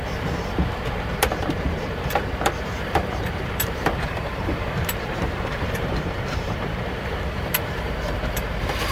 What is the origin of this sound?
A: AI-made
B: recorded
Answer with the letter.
A